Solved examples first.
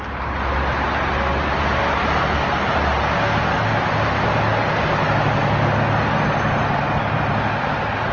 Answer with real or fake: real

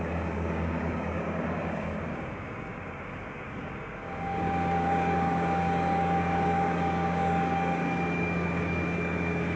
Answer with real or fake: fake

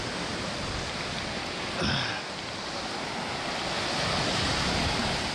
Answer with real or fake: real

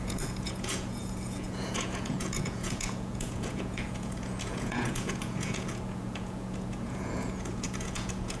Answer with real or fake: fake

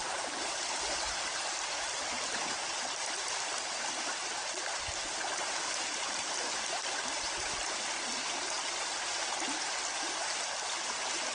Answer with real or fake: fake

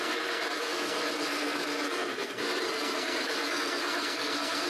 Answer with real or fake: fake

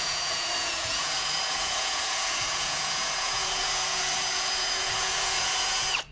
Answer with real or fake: fake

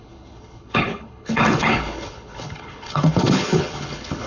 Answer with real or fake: fake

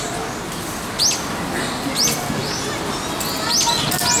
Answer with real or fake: real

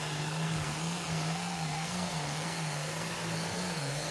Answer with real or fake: fake